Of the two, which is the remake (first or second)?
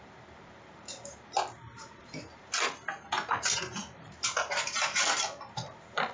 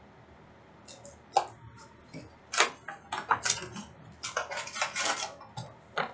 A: first